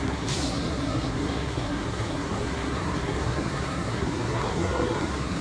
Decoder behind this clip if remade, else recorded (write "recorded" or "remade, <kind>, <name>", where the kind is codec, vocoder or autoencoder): remade, codec, SNAC